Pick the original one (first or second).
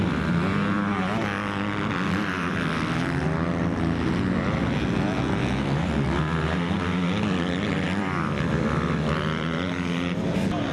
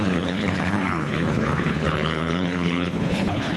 first